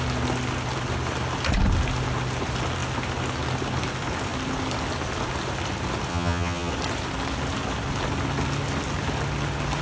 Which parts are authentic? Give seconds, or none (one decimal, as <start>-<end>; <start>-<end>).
0.0-6.1; 6.7-9.8